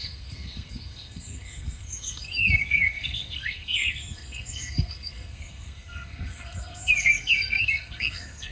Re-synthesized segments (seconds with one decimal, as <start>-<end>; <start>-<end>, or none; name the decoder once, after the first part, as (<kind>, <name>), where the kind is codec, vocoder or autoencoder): 0.0-8.5 (codec, SNAC)